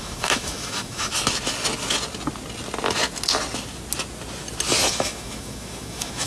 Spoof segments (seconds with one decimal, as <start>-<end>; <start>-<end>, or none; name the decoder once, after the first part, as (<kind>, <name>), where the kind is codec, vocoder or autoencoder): 0.0-1.1 (autoencoder, DAC-VAE); 4.9-6.3